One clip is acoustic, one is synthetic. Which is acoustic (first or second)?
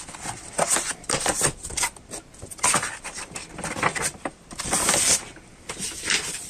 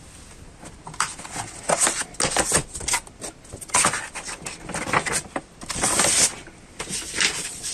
second